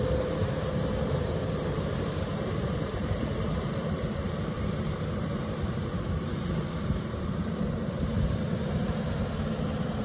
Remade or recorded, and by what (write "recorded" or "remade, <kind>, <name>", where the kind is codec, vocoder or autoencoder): remade, vocoder, BigVGAN v2